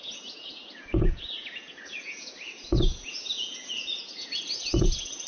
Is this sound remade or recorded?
remade